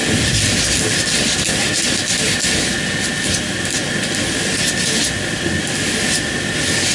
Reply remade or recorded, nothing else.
recorded